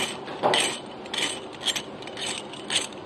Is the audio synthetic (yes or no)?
no